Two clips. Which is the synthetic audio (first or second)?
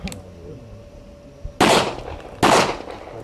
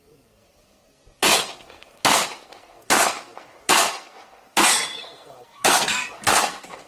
second